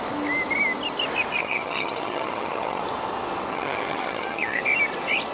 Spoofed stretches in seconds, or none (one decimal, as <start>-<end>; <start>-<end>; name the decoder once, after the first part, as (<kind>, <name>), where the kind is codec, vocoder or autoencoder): 1.4-2.8 (vocoder, HiFi-GAN); 3.5-4.6